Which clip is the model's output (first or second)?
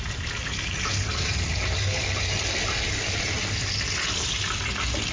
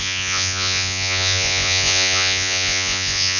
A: second